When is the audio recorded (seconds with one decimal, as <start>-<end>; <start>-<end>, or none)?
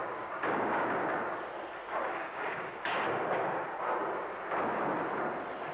0.8-2.0; 2.7-5.7